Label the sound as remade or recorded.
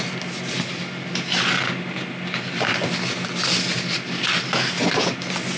recorded